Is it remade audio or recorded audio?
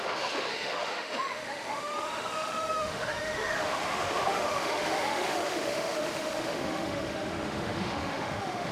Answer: remade